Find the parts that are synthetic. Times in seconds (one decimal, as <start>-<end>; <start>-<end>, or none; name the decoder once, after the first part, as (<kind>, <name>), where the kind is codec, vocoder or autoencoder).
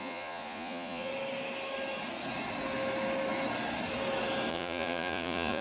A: 0.0-1.1 (vocoder, Vocos); 4.5-5.6